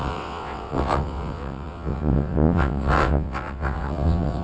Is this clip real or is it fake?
fake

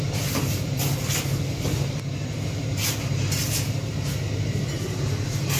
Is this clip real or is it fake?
real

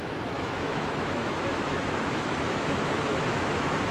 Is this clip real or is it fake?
fake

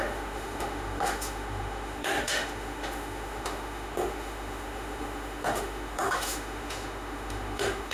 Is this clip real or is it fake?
fake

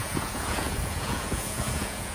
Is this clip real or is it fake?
fake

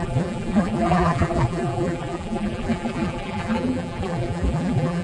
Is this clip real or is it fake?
fake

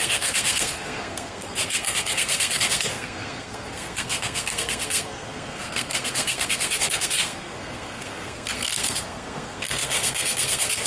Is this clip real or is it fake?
fake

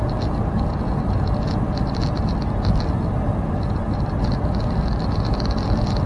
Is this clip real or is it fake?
real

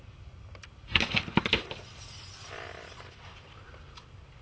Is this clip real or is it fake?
real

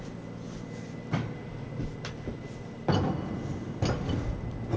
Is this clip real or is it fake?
real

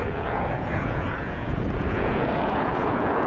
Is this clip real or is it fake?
fake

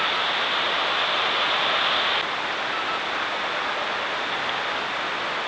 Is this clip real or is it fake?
real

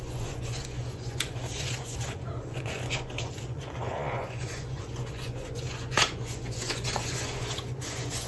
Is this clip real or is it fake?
fake